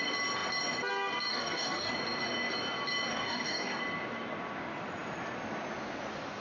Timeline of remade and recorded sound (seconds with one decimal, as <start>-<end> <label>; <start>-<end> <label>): 0.0-1.3 recorded; 1.3-1.9 remade; 1.9-3.1 recorded; 3.1-3.8 remade; 3.8-6.4 recorded